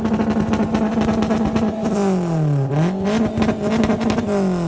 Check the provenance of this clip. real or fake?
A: real